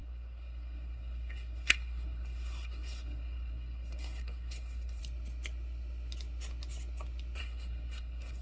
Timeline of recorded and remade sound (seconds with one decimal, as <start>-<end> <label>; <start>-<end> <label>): 0.0-5.0 remade; 5.0-7.4 recorded; 7.4-8.4 remade